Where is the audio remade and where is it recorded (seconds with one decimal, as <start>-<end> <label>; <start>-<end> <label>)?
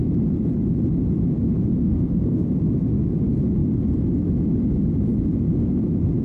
0.0-1.8 recorded; 1.8-2.5 remade; 2.5-6.2 recorded